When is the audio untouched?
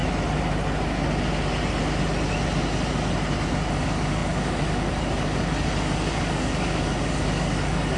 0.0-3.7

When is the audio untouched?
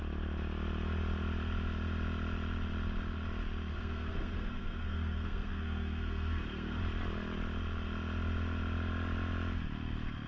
0.0-3.7; 6.8-10.3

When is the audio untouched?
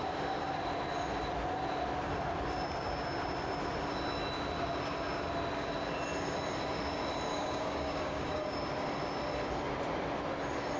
0.0-7.3; 8.6-10.8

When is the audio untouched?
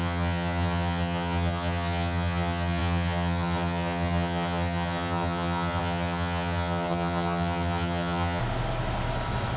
8.4-9.6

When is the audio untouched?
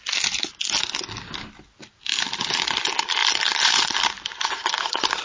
0.0-3.2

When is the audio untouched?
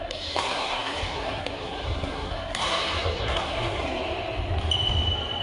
4.0-5.4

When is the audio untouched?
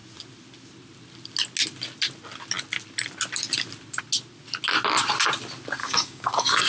0.0-5.8